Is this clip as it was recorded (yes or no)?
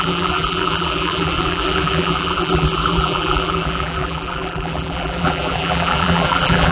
no